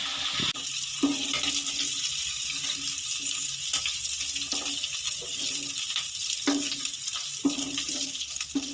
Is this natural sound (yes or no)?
yes